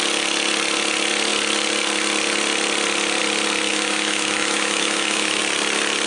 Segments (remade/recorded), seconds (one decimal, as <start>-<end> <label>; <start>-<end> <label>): 0.0-3.7 recorded; 3.7-5.4 remade; 5.4-6.1 recorded